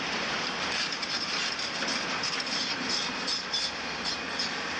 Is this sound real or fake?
fake